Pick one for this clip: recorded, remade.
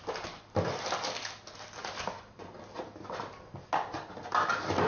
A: recorded